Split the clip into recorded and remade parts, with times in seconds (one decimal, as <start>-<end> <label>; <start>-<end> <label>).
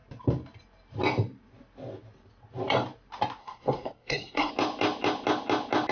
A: 0.0-3.4 recorded; 3.4-4.5 remade; 4.5-5.9 recorded